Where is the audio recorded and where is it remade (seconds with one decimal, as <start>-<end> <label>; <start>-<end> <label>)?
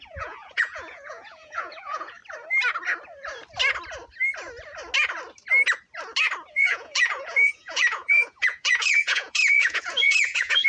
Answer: 0.0-2.2 remade; 2.2-6.5 recorded; 6.5-10.7 remade